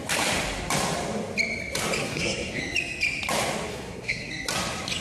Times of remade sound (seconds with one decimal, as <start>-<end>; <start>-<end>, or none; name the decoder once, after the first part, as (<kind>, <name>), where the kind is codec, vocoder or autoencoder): 2.0-2.6 (codec, SNAC); 3.7-4.3